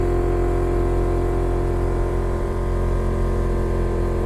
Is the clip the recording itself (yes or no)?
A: yes